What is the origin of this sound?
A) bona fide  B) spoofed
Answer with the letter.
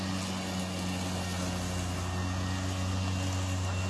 A